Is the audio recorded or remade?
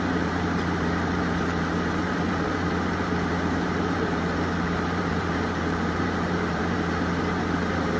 remade